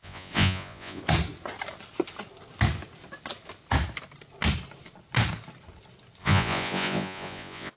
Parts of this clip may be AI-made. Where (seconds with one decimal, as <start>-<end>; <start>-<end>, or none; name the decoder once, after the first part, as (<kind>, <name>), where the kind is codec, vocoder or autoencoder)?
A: 0.0-1.0 (vocoder, Vocos); 6.2-7.8